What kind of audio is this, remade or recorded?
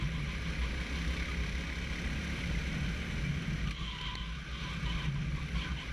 recorded